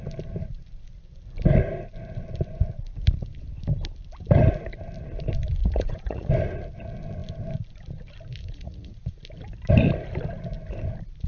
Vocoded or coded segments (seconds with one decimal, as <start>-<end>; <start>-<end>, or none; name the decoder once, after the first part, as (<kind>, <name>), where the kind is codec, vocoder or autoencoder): 5.6-6.3 (vocoder, Vocos); 8.4-9.2